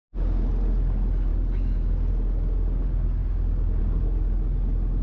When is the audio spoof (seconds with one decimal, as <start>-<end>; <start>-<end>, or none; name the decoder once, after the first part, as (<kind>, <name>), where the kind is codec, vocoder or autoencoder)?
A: none